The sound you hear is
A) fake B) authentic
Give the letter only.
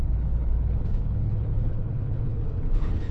A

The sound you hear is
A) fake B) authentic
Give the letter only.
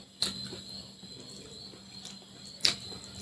B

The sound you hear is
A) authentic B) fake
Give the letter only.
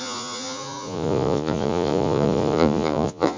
B